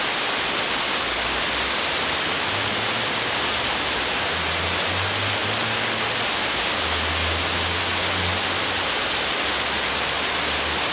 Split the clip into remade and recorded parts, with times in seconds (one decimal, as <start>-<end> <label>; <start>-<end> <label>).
0.0-10.9 recorded